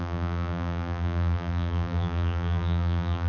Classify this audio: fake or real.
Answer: fake